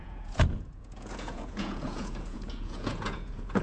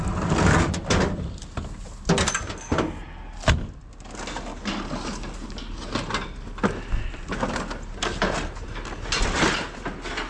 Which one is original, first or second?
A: second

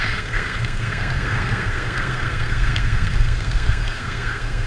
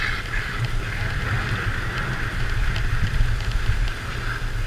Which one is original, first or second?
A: second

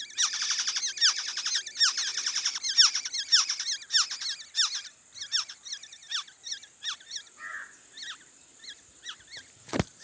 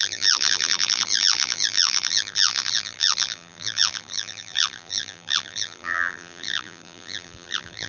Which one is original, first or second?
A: first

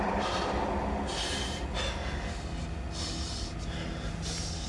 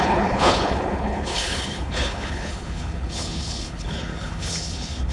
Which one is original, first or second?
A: first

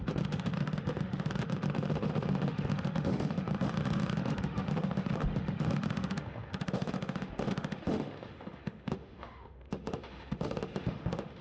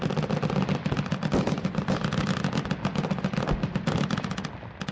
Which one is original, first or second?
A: second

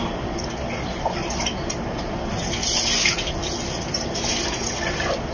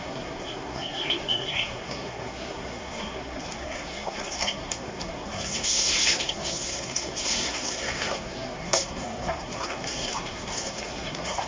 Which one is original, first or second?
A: first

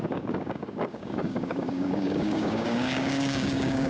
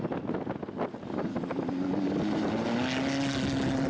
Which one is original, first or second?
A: second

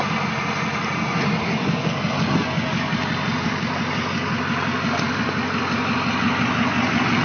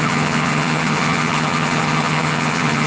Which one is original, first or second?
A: first